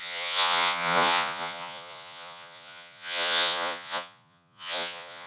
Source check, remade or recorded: remade